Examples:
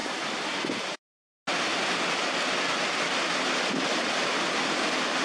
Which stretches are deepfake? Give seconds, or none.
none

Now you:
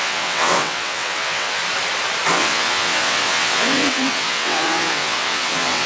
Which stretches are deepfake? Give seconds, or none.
0.0-1.6 (vocoder, WaveNeXt); 2.3-5.9